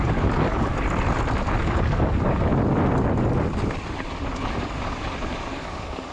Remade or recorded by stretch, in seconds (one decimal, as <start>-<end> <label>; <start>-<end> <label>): 0.0-0.7 remade; 0.7-1.6 recorded; 1.6-2.5 remade; 2.5-5.5 recorded; 5.5-6.1 remade